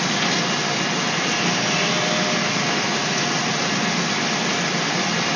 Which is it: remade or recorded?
recorded